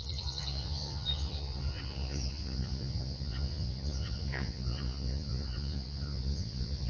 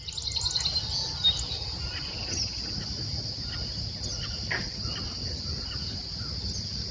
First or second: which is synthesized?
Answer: first